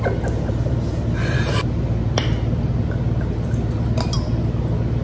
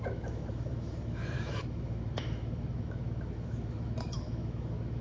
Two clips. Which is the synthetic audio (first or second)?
second